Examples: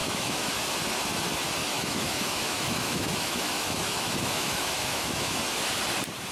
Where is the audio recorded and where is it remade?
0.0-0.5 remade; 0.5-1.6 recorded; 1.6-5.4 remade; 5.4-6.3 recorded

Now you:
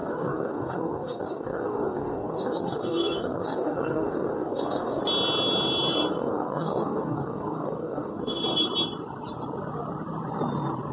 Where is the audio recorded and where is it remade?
0.0-5.0 remade; 5.0-6.1 recorded; 6.1-8.4 remade; 8.4-10.9 recorded

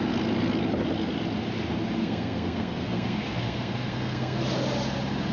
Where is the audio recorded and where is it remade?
0.0-2.0 recorded; 2.0-4.4 remade; 4.4-5.3 recorded

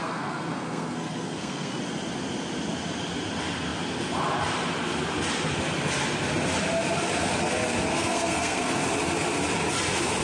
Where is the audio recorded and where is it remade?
0.0-1.8 remade; 1.8-7.9 recorded; 7.9-8.7 remade; 8.7-10.2 recorded

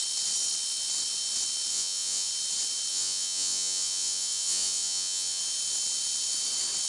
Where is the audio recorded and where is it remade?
0.0-1.7 recorded; 1.7-2.3 remade; 2.3-2.9 recorded; 2.9-5.4 remade; 5.4-6.9 recorded

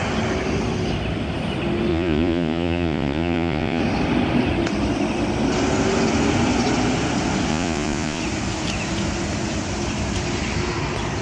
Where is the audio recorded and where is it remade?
0.0-1.9 recorded; 1.9-3.8 remade; 3.8-7.5 recorded; 7.5-8.2 remade; 8.2-11.2 recorded

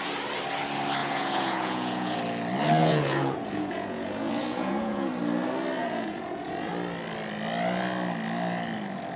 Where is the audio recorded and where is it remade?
0.0-1.0 recorded; 1.0-2.2 remade; 2.2-2.8 recorded; 2.8-5.1 remade; 5.1-5.8 recorded; 5.8-6.7 remade; 6.7-9.2 recorded

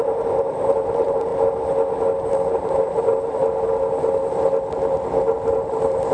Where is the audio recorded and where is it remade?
0.0-1.3 remade; 1.3-2.3 recorded; 2.3-3.4 remade; 3.4-5.5 recorded; 5.5-6.1 remade